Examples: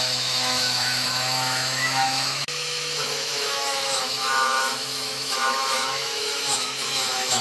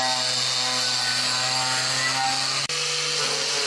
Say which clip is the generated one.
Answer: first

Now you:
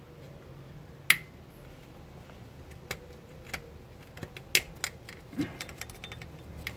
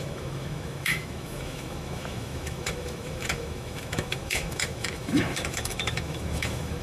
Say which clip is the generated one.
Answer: second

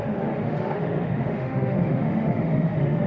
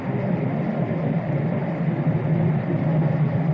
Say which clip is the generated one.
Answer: first